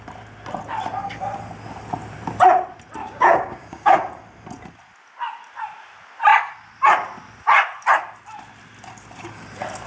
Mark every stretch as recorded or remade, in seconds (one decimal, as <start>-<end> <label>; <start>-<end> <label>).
0.0-3.0 recorded; 3.0-3.9 remade; 3.9-9.9 recorded